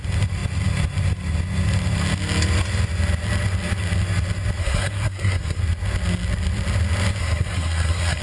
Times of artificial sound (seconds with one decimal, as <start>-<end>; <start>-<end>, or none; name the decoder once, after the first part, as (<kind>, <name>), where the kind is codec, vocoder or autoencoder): 4.6-5.6 (codec, SNAC); 7.2-8.2